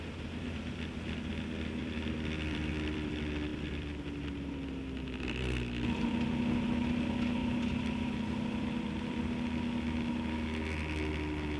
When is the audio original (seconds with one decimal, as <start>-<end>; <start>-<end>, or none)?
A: 0.0-1.8; 3.1-3.5; 4.0-7.4; 9.2-11.6